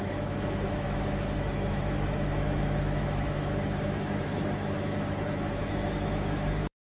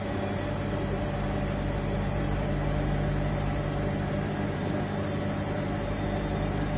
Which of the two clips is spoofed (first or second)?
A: first